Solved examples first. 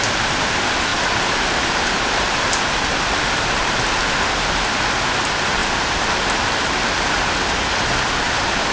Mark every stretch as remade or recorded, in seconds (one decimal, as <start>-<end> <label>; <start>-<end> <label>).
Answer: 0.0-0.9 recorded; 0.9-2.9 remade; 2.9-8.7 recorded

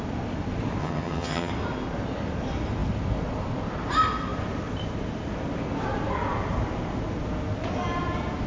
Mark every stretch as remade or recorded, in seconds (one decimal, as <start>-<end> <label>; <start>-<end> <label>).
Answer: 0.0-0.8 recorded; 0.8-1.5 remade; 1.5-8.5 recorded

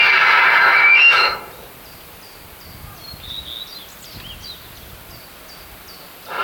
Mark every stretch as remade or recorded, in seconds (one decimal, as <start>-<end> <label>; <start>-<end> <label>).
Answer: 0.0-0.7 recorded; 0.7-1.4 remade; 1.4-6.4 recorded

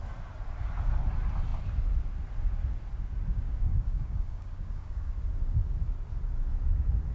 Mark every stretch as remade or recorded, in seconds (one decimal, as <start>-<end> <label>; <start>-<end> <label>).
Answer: 0.0-3.3 recorded; 3.3-5.1 remade; 5.1-7.1 recorded

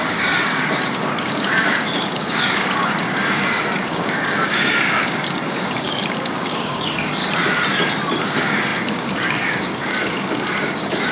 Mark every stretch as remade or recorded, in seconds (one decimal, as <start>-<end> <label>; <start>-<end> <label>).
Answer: 0.0-7.2 remade; 7.2-8.2 recorded; 8.2-11.1 remade

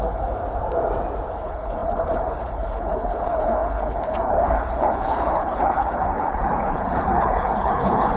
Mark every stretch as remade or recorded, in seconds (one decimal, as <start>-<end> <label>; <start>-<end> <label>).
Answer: 0.0-0.4 remade; 0.4-1.3 recorded; 1.3-8.2 remade